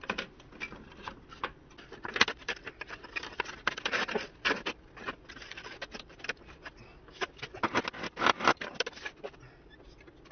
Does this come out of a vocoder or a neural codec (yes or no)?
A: no